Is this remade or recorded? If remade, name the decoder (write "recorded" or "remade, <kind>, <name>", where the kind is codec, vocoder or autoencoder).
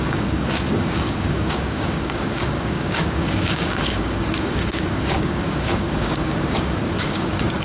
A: remade, codec, DAC